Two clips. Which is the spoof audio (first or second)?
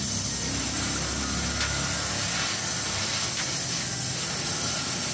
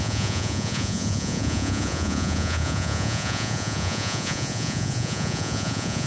second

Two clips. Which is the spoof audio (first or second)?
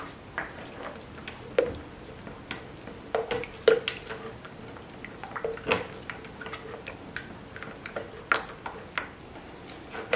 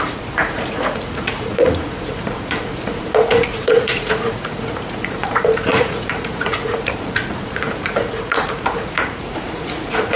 second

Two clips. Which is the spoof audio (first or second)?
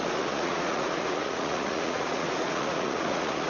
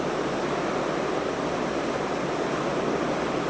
first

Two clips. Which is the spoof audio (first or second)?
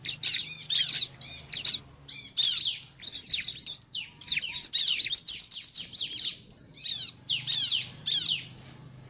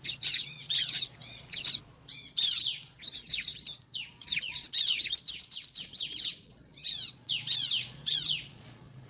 second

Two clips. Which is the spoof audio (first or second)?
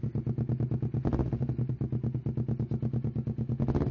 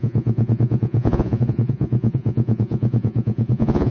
second